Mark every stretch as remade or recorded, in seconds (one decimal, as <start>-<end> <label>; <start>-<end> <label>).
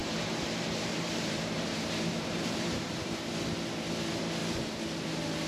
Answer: 0.0-3.3 remade; 3.3-5.5 recorded